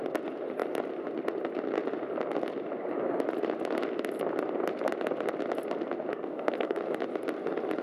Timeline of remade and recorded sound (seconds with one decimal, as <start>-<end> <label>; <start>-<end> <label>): 0.0-6.1 recorded; 6.1-6.8 remade; 6.8-7.8 recorded